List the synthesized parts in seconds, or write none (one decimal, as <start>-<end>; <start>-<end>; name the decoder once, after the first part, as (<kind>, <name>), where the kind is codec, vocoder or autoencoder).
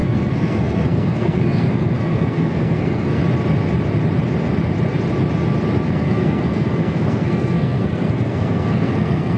0.0-3.2 (codec, SNAC); 5.9-9.4